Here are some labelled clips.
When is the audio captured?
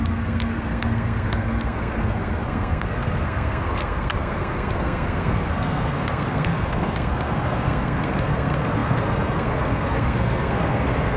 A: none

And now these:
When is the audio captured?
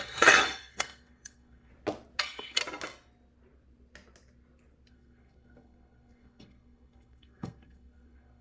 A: 1.7-2.2; 2.6-4.9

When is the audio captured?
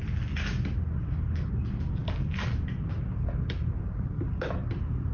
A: 0.0-5.1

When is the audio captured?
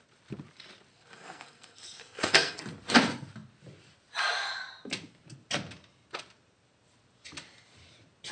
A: 0.0-0.9; 2.6-8.3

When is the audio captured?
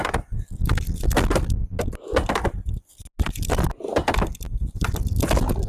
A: 0.0-5.7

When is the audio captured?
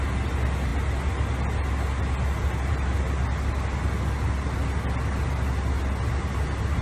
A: 0.0-6.8